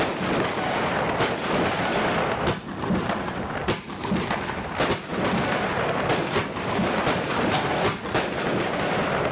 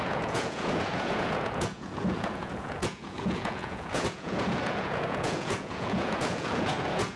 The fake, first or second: second